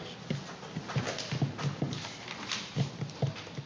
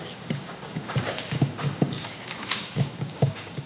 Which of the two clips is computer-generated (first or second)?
second